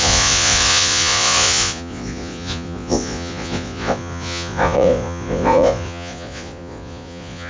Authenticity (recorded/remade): remade